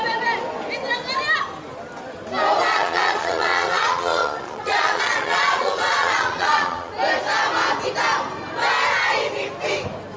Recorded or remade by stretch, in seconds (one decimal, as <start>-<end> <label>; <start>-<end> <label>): 0.0-2.7 recorded; 2.7-6.9 remade; 6.9-10.2 recorded